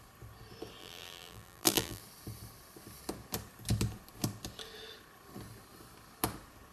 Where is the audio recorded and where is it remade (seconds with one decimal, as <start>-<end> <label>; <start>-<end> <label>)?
0.0-0.8 recorded; 0.8-2.0 remade; 2.0-6.7 recorded